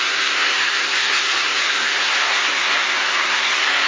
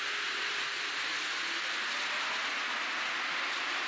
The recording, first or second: second